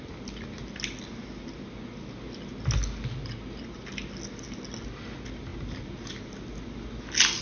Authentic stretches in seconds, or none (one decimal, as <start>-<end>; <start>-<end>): 0.0-7.4